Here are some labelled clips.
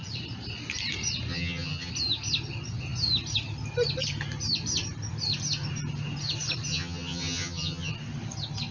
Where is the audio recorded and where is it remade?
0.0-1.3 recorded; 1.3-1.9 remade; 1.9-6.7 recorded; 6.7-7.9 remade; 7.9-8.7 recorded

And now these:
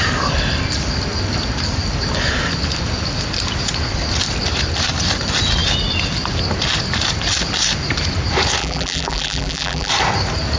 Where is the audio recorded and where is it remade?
0.0-8.6 recorded; 8.6-9.9 remade; 9.9-10.6 recorded

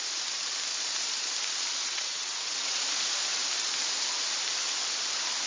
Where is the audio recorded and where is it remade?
0.0-1.8 recorded; 1.8-2.8 remade; 2.8-5.5 recorded

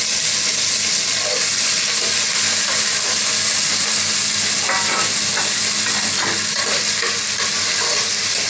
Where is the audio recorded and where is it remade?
0.0-8.5 recorded